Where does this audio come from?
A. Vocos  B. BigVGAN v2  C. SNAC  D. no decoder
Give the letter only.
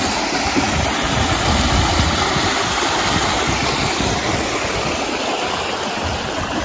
D